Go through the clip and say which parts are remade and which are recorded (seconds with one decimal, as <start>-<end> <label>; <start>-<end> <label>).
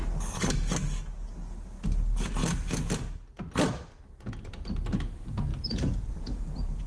0.0-5.5 recorded; 5.5-6.9 remade